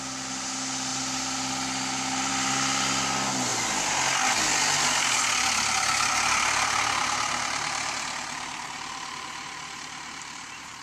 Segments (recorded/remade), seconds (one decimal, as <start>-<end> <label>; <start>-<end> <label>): 0.0-7.0 recorded; 7.0-10.8 remade